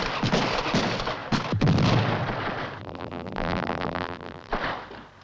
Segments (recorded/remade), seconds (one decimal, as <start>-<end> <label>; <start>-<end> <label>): 0.0-2.8 recorded; 2.8-4.5 remade; 4.5-5.2 recorded